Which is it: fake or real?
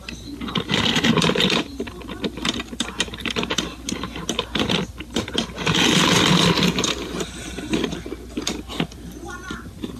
real